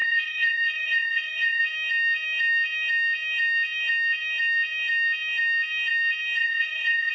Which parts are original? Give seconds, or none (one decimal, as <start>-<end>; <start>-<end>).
1.6-6.4